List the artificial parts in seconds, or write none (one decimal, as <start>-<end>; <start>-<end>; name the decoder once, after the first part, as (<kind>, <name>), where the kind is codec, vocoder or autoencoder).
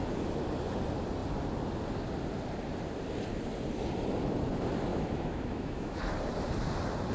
4.9-6.0 (autoencoder, DAC-VAE)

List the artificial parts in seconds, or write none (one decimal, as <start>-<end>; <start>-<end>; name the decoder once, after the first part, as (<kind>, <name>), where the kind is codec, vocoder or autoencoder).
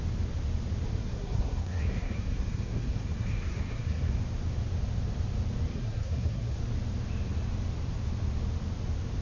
1.0-4.1 (codec, SNAC); 5.7-6.6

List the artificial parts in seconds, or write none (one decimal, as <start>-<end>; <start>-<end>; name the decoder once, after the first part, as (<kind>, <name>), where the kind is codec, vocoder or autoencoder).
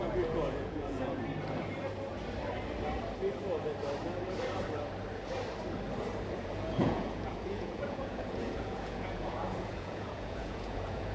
0.0-1.2 (vocoder, Vocos); 6.3-11.1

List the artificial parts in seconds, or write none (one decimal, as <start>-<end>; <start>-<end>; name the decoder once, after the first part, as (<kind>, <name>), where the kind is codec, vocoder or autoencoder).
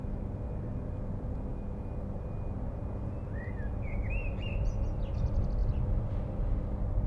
none